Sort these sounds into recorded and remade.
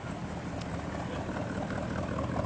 recorded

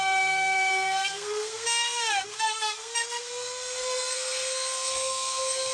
remade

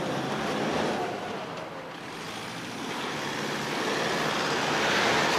recorded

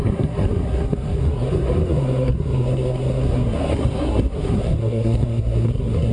remade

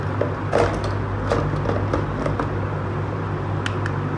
recorded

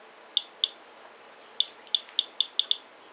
recorded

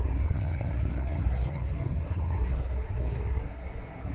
remade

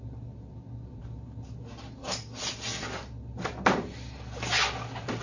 recorded